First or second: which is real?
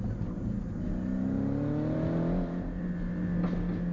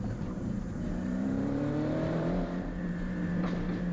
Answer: first